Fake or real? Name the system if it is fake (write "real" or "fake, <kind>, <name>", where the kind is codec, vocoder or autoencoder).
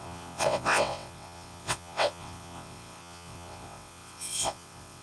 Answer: fake, vocoder, WaveNeXt